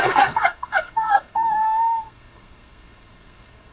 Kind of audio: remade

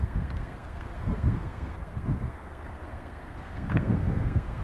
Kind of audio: remade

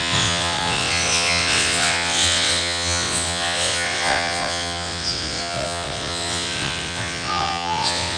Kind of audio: remade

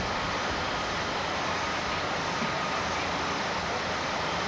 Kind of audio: recorded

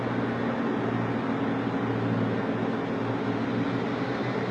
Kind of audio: recorded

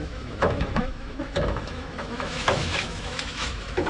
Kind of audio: remade